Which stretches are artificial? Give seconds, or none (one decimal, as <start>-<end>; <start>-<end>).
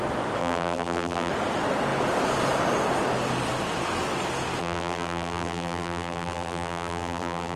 0.4-1.3; 4.6-7.6